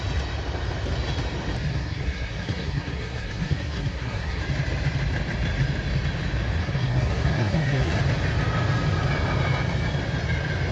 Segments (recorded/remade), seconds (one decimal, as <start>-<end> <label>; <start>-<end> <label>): 0.0-1.7 recorded; 1.7-4.4 remade; 4.4-6.6 recorded; 6.6-8.0 remade; 8.0-10.7 recorded